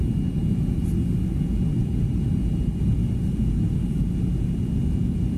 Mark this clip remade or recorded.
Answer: recorded